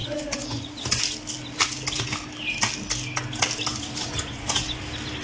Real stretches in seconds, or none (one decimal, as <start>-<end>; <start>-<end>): 1.0-3.7; 4.8-5.2